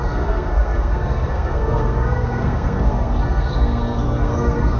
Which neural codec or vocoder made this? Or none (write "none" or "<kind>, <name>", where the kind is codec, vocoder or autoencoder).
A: codec, SNAC